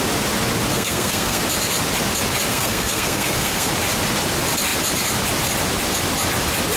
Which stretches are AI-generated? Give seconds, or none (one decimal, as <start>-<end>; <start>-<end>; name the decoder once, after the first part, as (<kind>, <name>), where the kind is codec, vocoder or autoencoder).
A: 0.7-1.4 (codec, SNAC); 2.5-3.7